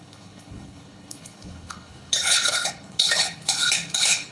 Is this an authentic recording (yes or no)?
no